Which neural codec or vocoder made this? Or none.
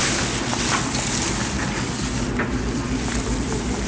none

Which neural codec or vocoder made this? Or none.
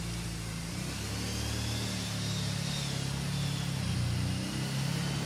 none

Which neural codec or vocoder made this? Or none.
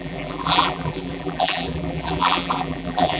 vocoder, BigVGAN v2